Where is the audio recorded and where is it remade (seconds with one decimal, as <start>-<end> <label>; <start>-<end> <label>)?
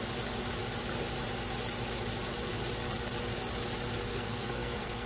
0.0-4.1 recorded; 4.1-5.1 remade